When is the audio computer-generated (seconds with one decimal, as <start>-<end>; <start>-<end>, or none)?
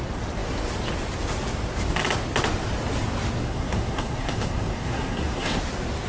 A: 3.4-5.6